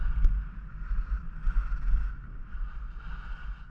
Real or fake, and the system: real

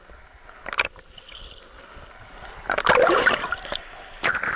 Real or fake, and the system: real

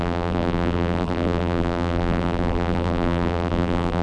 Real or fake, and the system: fake, vocoder, BigVGAN v2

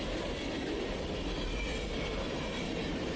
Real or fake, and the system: real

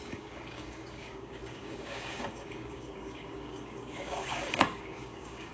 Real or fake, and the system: fake, codec, DAC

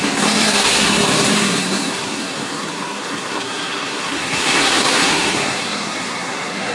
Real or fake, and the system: fake, codec, SNAC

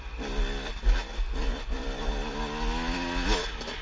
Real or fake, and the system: real